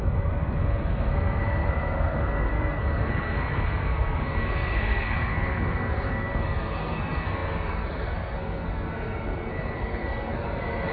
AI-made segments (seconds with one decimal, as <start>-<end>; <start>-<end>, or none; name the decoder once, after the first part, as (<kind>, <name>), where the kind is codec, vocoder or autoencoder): 0.0-10.9 (codec, SNAC)